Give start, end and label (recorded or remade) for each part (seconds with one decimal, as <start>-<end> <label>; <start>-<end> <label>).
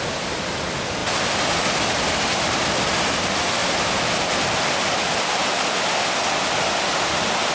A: 0.0-7.5 recorded